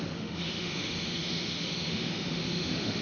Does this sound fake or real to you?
fake